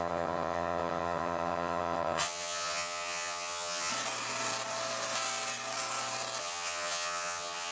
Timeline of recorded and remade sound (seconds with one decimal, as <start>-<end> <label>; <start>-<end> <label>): 0.0-3.9 remade; 3.9-6.4 recorded; 6.4-7.7 remade